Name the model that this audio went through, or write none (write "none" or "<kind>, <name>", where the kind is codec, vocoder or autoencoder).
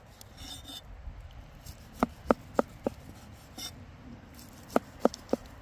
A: none